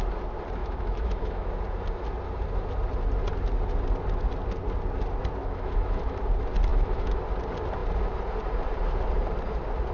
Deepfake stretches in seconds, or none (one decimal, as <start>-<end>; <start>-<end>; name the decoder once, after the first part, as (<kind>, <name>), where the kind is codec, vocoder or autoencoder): 0.6-1.5 (autoencoder, DAC-VAE); 5.4-6.2; 6.7-7.2